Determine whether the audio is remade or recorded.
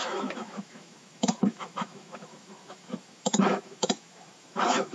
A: remade